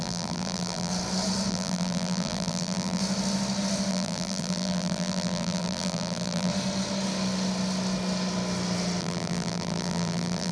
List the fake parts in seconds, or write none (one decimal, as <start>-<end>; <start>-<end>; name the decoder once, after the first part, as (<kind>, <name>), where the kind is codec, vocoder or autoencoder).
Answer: 0.0-0.9 (vocoder, BigVGAN v2); 1.5-3.0; 3.9-6.5; 9.0-10.5